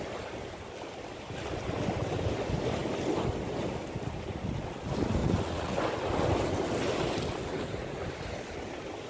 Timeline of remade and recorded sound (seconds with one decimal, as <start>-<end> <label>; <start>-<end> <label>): 0.0-5.2 recorded; 5.2-5.8 remade; 5.8-9.1 recorded